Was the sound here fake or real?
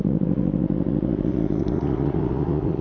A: fake